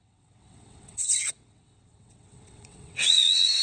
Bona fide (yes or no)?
no